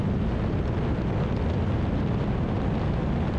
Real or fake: real